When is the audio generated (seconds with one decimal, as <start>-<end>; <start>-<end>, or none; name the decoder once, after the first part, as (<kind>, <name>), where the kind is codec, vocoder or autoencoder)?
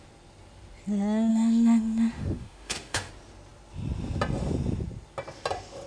1.3-3.1 (autoencoder, DAC-VAE)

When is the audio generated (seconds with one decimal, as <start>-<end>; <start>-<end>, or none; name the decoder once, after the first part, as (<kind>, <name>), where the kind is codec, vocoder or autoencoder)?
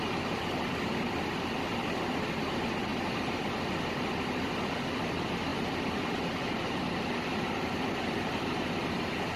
2.9-3.6 (vocoder, BigVGAN v2); 5.5-8.7